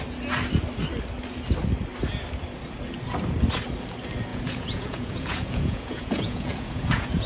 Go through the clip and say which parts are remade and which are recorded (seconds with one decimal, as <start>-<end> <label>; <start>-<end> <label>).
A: 0.0-4.3 recorded; 4.3-7.3 remade